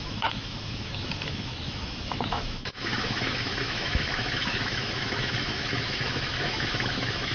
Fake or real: fake